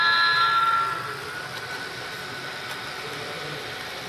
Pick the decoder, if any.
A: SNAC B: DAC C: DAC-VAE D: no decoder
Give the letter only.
D